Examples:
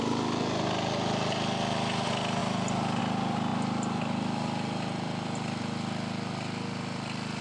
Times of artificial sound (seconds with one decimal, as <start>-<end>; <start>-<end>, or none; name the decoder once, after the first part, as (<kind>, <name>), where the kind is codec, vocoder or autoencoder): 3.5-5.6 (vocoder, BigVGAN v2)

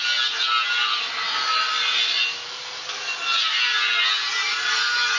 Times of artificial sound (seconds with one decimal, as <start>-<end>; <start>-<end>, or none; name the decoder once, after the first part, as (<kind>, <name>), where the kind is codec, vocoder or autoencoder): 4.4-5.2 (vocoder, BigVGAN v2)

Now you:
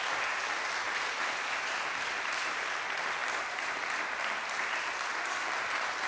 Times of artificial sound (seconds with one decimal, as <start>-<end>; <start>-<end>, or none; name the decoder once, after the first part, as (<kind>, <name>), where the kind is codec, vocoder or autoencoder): 0.0-0.4 (vocoder, BigVGAN v2); 1.7-6.1

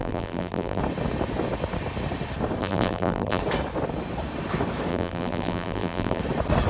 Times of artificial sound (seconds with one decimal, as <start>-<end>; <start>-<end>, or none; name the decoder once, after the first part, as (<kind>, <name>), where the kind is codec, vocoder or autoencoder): 0.0-0.8 (vocoder, BigVGAN v2); 2.6-3.4; 4.9-6.2

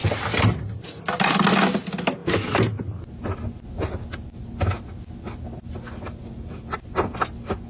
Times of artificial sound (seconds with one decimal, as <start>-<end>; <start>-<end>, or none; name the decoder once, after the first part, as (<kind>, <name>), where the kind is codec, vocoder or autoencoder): none

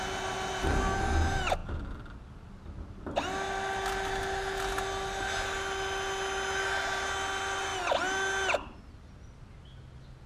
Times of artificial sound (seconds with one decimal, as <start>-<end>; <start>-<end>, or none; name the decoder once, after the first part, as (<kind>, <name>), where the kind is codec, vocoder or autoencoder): none

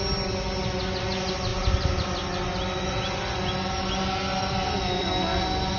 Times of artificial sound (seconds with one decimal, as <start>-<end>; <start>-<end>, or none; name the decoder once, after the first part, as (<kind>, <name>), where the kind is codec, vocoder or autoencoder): none